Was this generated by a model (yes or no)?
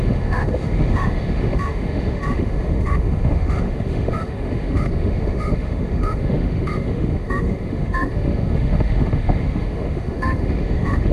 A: yes